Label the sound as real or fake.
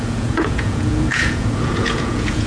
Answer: fake